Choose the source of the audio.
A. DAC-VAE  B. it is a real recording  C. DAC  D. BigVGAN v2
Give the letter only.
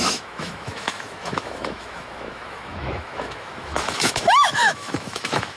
A